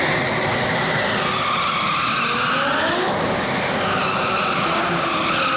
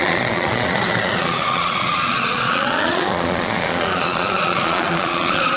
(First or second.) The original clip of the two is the first